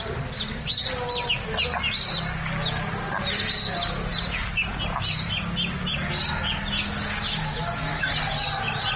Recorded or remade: recorded